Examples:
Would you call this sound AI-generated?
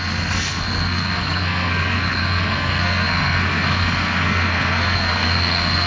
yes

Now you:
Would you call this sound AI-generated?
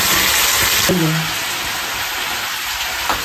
no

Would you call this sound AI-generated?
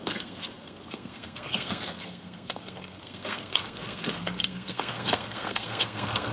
yes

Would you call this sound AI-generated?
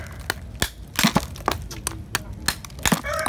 no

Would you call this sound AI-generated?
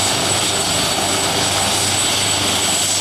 no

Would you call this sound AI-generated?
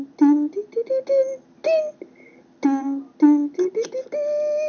no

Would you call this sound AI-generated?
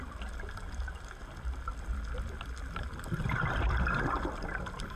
no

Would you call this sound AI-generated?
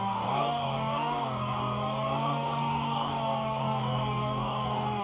yes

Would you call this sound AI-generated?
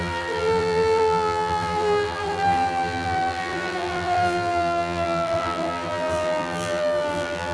yes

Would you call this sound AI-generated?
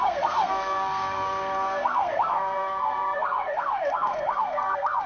yes